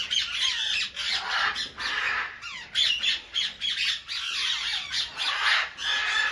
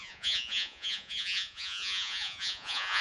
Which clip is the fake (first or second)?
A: second